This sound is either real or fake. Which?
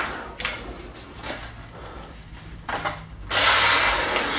real